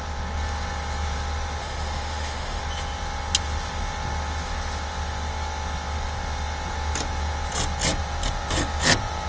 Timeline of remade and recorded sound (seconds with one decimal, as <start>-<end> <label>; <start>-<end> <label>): 0.0-1.6 recorded; 1.6-2.6 remade; 2.6-9.3 recorded